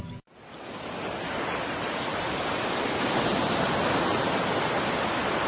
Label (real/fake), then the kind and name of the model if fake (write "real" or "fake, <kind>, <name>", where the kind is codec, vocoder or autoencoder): real